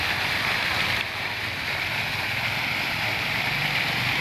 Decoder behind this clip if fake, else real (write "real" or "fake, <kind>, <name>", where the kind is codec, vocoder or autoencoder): fake, vocoder, BigVGAN v2